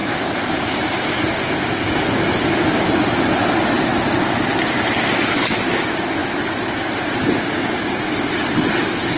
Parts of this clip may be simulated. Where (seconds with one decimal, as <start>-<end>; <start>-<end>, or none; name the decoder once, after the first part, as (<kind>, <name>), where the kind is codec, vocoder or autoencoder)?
0.0-0.9 (vocoder, BigVGAN v2); 4.5-5.1; 6.2-7.7